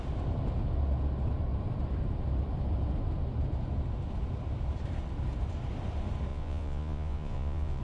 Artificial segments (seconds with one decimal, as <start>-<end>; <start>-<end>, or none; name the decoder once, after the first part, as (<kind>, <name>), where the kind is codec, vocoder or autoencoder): 6.3-7.8 (vocoder, Vocos)